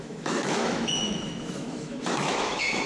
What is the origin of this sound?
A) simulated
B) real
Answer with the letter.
A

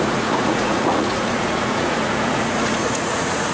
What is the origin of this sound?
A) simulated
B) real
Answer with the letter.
A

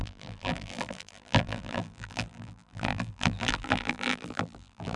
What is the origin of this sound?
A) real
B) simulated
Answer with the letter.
B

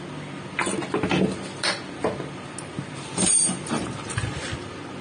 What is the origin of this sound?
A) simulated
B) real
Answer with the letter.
B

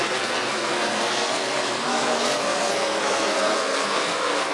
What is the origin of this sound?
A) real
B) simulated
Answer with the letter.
B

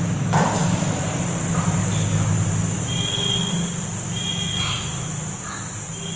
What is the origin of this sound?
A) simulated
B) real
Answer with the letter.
B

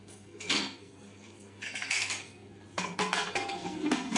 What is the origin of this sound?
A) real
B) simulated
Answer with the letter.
B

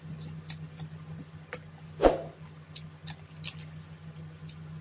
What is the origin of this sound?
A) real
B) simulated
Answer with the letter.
A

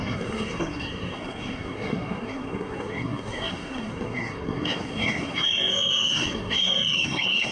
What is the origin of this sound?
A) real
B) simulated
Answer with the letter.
B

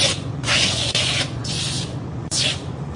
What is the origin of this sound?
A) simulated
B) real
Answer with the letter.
A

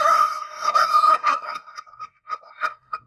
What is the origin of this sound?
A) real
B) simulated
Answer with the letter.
B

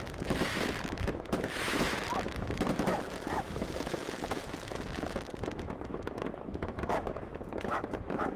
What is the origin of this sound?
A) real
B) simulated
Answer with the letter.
B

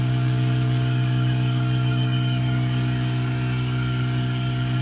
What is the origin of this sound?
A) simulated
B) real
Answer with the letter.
A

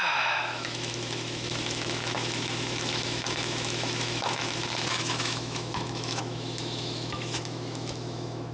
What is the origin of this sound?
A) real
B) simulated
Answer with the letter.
B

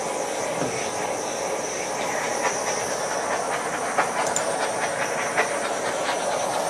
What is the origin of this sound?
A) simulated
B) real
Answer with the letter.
B